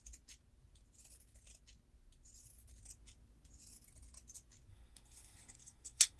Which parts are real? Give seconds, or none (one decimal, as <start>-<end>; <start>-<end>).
0.0-4.7